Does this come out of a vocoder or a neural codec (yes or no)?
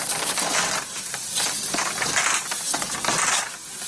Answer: no